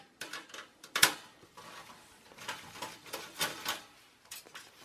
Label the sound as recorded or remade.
recorded